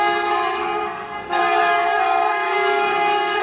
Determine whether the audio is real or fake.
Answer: fake